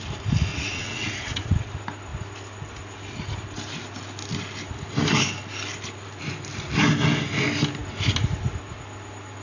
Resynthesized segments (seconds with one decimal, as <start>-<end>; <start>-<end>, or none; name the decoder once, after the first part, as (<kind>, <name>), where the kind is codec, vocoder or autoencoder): 0.5-1.7 (vocoder, WaveNeXt)